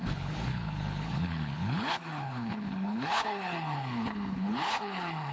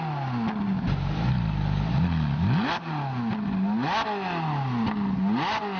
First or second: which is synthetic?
first